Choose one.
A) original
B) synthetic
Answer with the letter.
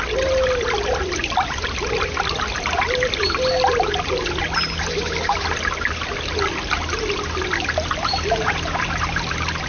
A